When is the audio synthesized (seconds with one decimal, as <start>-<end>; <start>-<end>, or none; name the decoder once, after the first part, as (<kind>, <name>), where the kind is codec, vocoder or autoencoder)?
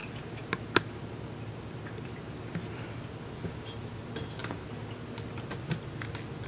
none